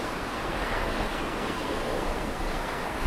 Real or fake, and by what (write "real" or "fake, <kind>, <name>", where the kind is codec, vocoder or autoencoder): fake, codec, SNAC